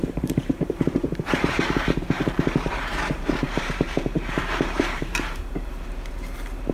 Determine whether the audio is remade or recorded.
remade